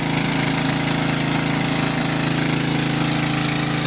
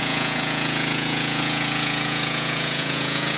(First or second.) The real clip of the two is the first